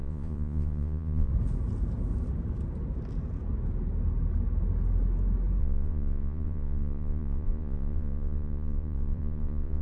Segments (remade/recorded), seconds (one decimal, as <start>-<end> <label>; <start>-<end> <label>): 0.0-1.3 remade; 1.3-5.6 recorded; 5.6-9.8 remade